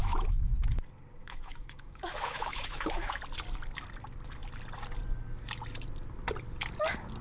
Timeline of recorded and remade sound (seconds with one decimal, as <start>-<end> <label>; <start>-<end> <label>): 0.0-0.6 remade; 0.6-1.2 recorded; 1.2-3.2 remade; 3.2-7.2 recorded